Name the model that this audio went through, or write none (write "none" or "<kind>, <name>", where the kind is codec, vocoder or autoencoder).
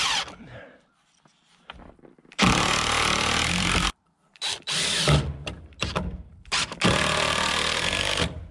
vocoder, BigVGAN v2